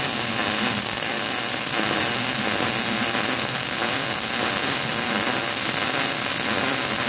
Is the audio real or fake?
real